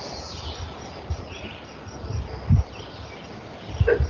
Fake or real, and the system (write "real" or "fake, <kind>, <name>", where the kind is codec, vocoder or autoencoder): real